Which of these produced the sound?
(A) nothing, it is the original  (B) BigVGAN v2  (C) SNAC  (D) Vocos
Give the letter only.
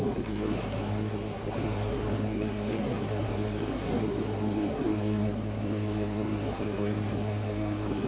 C